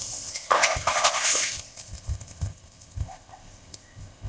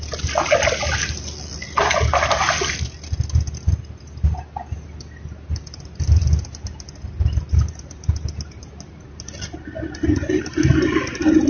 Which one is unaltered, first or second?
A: second